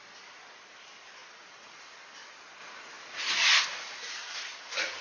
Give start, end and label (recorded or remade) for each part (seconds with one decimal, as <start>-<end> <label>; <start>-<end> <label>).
0.0-1.2 recorded; 1.2-1.8 remade; 1.8-2.6 recorded; 2.6-3.3 remade; 3.3-3.7 recorded; 3.7-4.5 remade; 4.5-5.0 recorded

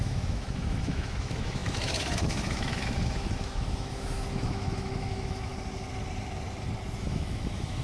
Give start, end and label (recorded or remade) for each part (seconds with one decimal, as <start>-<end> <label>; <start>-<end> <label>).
0.0-5.5 remade; 5.5-7.0 recorded; 7.0-7.8 remade